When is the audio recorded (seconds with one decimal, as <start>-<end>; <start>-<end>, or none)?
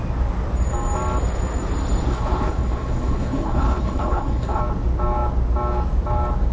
0.0-2.1; 4.6-6.5